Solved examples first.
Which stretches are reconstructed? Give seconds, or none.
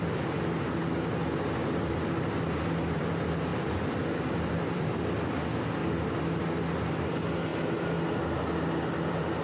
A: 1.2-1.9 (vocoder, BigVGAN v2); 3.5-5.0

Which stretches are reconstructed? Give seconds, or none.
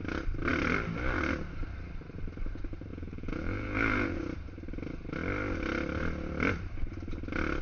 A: 2.9-4.2 (vocoder, Vocos)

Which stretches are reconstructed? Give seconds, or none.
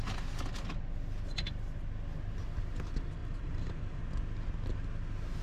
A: 3.2-4.0 (vocoder, BigVGAN v2)